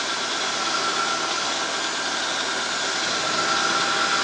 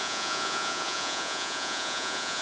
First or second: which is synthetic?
second